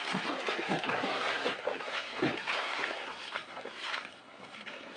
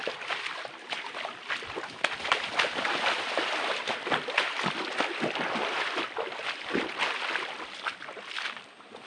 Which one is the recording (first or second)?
second